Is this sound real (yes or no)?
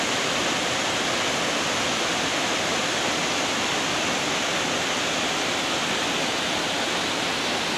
yes